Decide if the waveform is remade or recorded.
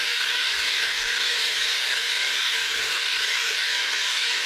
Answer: remade